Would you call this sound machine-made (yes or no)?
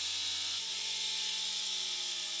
yes